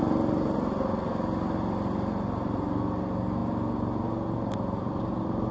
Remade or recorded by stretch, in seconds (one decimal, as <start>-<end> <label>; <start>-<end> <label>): 0.0-5.5 recorded